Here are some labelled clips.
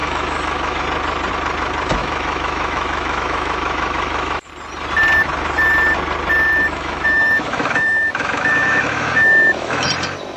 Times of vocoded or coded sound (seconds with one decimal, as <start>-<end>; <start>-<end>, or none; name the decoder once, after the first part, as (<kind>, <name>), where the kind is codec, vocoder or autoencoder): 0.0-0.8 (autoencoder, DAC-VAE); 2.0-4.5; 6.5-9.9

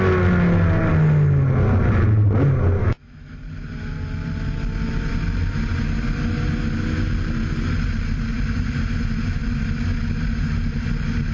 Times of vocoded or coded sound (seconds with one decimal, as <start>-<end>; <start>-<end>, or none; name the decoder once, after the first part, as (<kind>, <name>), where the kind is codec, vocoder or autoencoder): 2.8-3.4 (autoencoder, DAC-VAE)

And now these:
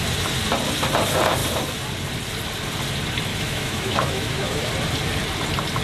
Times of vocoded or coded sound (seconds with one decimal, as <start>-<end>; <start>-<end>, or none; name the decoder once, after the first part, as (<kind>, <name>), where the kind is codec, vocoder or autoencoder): 3.3-4.7 (autoencoder, DAC-VAE)